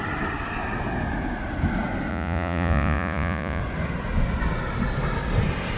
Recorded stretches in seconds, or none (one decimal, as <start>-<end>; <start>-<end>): 0.0-2.1; 3.6-5.8